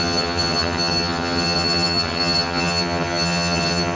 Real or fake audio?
fake